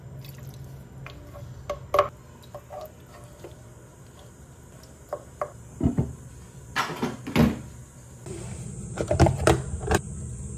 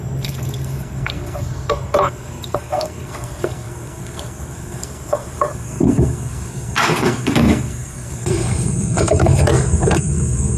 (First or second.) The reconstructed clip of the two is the second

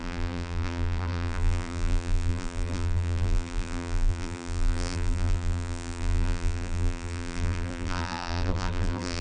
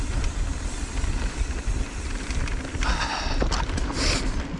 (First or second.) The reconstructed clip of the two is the first